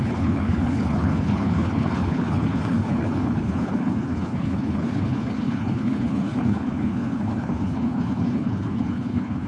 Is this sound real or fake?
fake